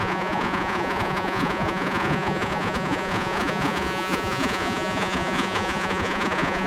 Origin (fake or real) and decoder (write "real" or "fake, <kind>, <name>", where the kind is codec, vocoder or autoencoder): fake, vocoder, Vocos